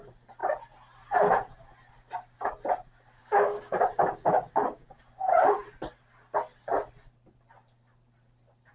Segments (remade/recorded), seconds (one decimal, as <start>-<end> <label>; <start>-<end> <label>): 0.0-3.2 recorded; 3.2-5.0 remade; 5.0-8.7 recorded